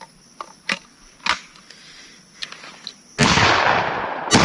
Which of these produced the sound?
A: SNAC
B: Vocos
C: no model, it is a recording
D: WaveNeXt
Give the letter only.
C